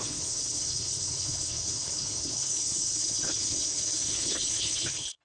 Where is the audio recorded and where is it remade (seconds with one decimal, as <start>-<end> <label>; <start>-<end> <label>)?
0.0-5.2 remade